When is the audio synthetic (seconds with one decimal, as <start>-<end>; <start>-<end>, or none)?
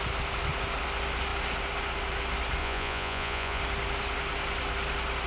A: 2.6-3.6